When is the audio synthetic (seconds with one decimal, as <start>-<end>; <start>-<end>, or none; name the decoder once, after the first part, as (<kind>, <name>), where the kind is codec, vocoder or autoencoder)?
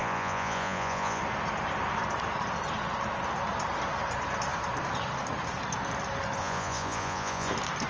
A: 0.0-1.2 (vocoder, Vocos); 6.4-7.5